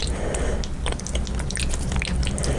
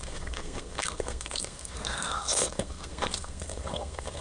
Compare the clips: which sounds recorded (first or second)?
first